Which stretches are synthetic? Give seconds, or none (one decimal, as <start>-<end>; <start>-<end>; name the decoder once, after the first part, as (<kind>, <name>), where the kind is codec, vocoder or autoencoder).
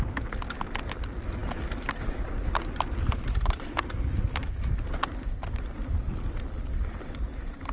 none